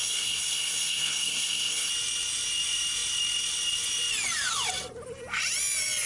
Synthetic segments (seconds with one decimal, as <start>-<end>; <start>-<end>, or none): 0.0-1.9